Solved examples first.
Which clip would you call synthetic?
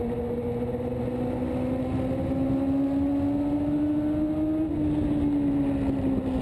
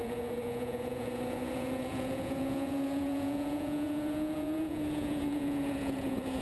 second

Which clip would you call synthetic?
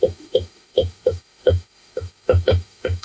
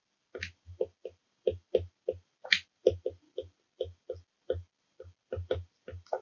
first